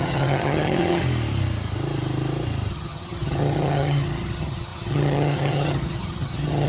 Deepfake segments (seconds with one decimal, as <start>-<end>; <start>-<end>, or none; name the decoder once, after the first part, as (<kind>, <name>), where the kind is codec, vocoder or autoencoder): 0.0-1.0 (vocoder, HiFi-GAN); 2.7-6.7